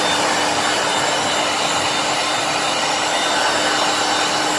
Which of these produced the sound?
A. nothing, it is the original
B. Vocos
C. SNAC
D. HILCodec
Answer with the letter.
A